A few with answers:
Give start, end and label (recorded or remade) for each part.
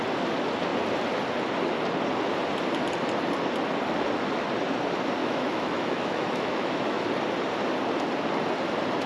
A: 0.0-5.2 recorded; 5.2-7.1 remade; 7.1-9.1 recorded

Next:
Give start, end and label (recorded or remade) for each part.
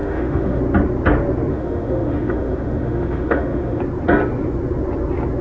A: 0.0-0.6 remade; 0.6-1.5 recorded; 1.5-3.8 remade; 3.8-5.4 recorded